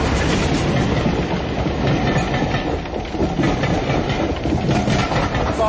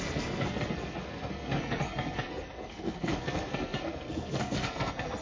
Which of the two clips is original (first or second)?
first